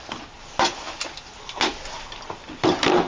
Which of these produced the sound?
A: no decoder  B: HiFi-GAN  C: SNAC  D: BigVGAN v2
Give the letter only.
A